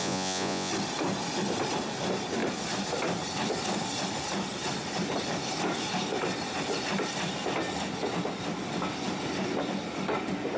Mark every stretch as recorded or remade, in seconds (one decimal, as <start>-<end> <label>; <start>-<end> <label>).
0.0-0.7 remade; 0.7-10.6 recorded